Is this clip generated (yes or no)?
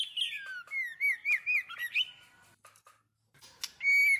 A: no